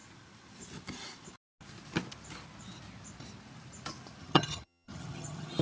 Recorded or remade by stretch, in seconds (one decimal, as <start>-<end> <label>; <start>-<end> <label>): 0.0-4.2 recorded; 4.2-5.6 remade